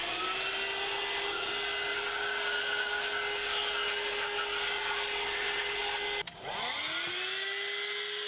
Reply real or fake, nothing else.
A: real